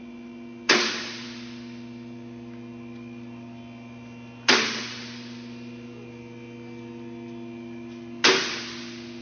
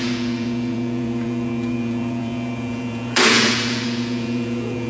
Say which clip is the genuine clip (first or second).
first